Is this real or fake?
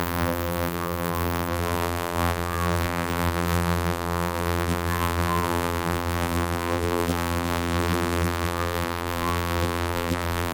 fake